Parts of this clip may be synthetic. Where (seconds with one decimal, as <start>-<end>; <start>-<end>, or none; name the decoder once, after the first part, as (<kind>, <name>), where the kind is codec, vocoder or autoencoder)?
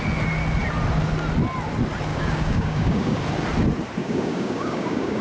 2.1-3.2 (codec, DAC); 4.0-5.2